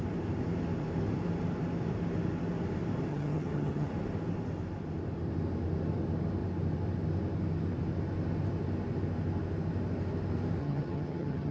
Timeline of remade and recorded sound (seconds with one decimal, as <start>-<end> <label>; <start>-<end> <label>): 0.0-3.1 recorded; 3.1-3.9 remade; 3.9-10.6 recorded; 10.6-11.5 remade